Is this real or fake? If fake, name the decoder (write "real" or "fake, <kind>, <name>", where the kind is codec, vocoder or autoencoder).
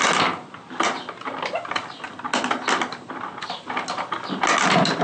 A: real